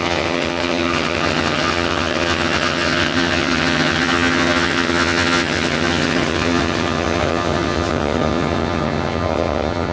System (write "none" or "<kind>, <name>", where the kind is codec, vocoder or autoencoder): vocoder, HiFi-GAN